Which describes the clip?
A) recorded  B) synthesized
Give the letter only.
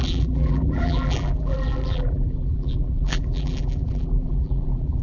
B